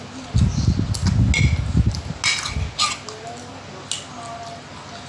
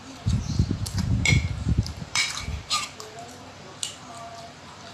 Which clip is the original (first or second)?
first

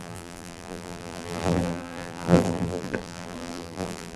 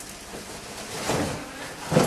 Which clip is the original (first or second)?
second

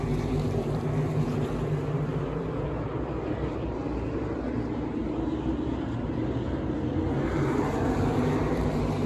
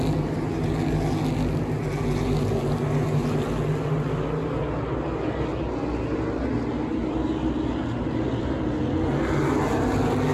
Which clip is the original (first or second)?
second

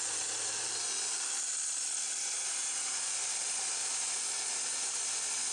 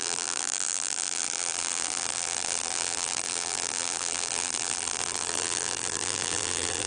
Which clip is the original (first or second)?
first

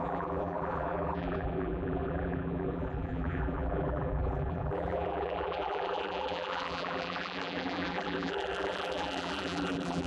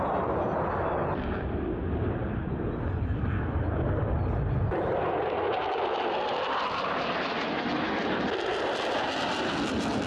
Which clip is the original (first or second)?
second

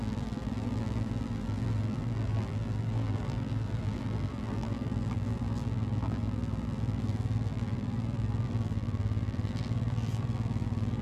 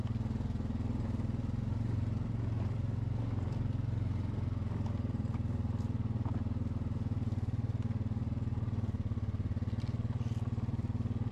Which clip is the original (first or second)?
second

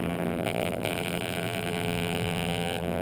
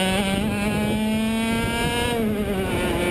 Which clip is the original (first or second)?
second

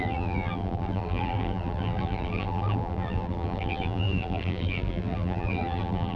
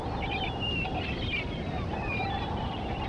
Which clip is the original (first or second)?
second